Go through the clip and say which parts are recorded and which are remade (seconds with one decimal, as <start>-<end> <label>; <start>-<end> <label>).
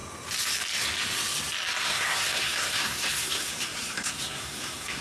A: 0.0-1.8 recorded; 1.8-5.0 remade